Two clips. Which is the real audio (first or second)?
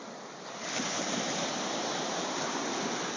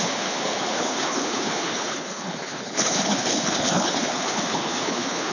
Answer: first